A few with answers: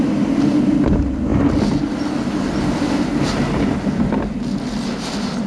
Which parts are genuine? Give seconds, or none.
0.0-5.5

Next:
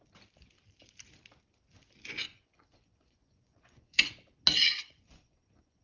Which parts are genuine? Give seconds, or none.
0.0-2.3; 4.1-4.7

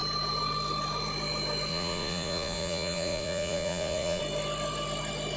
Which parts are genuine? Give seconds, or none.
0.0-1.7; 4.2-5.4

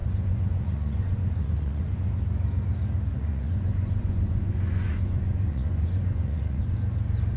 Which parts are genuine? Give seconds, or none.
2.1-3.1; 6.6-7.4

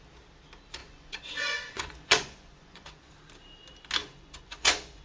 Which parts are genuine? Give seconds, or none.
0.0-0.8; 3.1-4.0